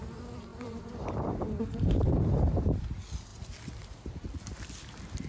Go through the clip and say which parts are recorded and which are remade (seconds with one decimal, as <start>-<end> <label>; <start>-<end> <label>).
0.0-0.5 recorded; 0.5-2.8 remade; 2.8-5.3 recorded